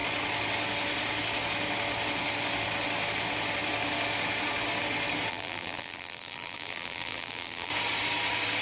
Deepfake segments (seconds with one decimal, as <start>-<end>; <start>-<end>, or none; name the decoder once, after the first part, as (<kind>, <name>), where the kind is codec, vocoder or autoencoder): 5.3-7.7 (vocoder, BigVGAN v2)

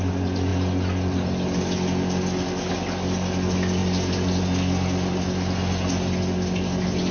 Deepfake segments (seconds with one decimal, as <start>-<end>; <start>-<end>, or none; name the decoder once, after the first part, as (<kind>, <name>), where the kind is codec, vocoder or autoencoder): none

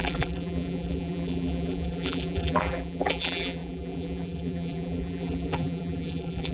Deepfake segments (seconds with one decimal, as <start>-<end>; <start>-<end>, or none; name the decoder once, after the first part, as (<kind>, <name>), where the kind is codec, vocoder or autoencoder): 0.0-6.5 (vocoder, BigVGAN v2)

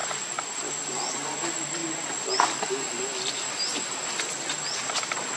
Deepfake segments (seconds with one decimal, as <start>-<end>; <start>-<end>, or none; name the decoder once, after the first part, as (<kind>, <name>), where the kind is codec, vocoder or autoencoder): none

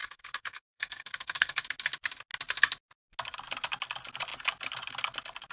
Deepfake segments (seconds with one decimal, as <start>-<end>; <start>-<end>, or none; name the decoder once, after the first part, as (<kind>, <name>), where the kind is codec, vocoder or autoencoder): 0.0-1.6 (codec, SNAC)

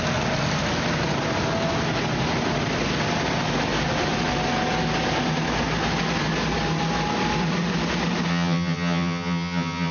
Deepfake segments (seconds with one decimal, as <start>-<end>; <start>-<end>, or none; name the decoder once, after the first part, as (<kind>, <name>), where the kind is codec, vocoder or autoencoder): 8.3-9.9 (vocoder, HiFi-GAN)

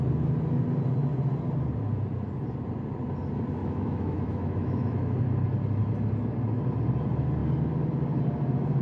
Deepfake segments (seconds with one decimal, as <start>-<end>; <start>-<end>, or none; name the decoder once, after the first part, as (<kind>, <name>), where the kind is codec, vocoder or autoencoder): 3.6-5.2 (autoencoder, DAC-VAE)